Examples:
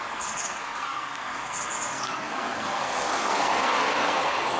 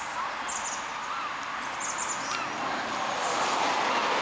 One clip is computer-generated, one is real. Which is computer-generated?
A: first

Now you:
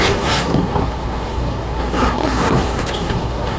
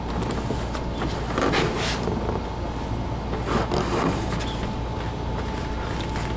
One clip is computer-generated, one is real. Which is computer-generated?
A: first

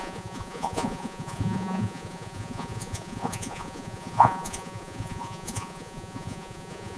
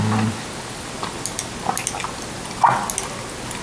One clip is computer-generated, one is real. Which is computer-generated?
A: first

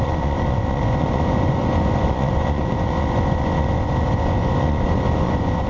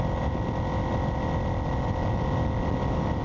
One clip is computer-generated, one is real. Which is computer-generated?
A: first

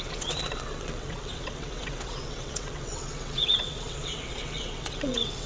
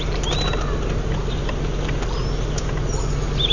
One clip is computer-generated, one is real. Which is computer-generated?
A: first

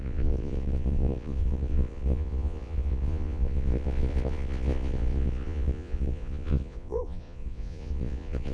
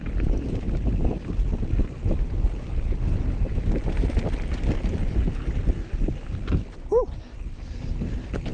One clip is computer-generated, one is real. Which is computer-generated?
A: first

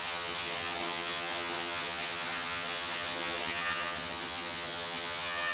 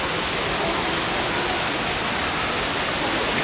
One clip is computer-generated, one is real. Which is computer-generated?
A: first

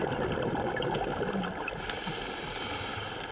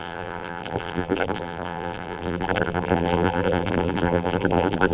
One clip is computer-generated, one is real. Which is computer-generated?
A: second